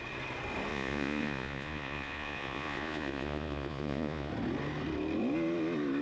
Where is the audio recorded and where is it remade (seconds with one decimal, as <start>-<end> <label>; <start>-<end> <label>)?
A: 0.0-0.7 recorded; 0.7-4.3 remade; 4.3-6.0 recorded

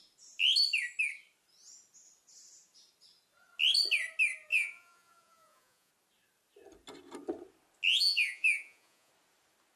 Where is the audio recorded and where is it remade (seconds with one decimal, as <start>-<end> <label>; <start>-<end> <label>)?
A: 0.0-4.5 recorded; 4.5-5.9 remade; 5.9-7.9 recorded; 7.9-9.1 remade; 9.1-9.8 recorded